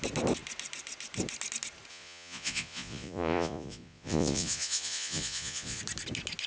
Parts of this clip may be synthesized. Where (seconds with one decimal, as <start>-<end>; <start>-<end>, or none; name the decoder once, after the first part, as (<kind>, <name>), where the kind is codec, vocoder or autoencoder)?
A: 1.9-5.8 (vocoder, Vocos)